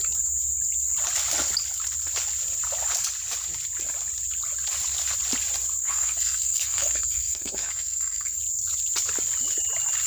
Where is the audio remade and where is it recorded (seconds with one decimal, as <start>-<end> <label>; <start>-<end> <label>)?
0.0-5.8 recorded; 5.8-8.4 remade; 8.4-10.1 recorded